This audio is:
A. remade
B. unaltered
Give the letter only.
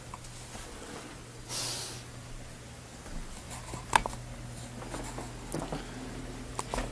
B